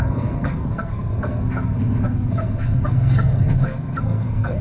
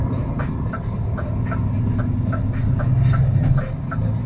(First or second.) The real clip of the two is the second